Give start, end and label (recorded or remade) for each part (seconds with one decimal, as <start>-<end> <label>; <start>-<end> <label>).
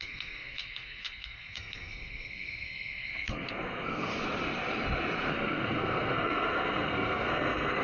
0.0-4.1 remade; 4.1-5.3 recorded; 5.3-7.8 remade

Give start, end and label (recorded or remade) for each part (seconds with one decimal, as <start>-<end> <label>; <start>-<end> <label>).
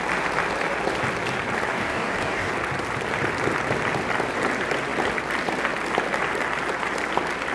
0.0-1.7 recorded; 1.7-2.5 remade; 2.5-7.5 recorded